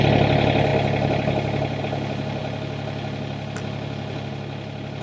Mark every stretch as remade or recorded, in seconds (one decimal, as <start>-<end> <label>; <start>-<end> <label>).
0.0-5.0 recorded